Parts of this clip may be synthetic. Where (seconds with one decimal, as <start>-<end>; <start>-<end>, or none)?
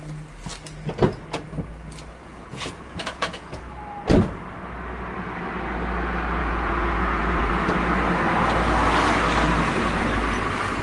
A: 2.2-3.6; 6.4-7.5